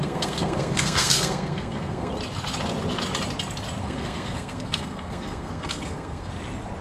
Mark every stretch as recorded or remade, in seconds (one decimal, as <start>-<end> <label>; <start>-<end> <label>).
0.0-2.1 remade; 2.1-3.8 recorded; 3.8-6.3 remade; 6.3-6.8 recorded